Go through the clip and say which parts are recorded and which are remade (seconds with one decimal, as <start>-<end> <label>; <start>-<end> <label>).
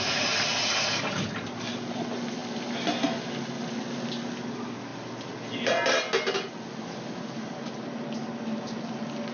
0.0-9.3 recorded